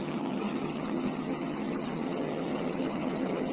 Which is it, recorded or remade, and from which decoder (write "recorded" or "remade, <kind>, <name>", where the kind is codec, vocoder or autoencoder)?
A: remade, vocoder, HiFi-GAN